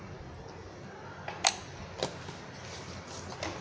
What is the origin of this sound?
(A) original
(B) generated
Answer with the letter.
A